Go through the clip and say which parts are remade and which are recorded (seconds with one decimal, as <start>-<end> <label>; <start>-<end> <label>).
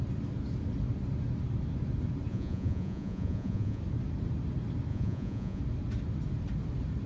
0.0-2.3 recorded; 2.3-3.8 remade; 3.8-4.9 recorded; 4.9-5.6 remade; 5.6-7.1 recorded